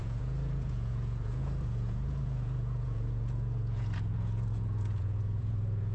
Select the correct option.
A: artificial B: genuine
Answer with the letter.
A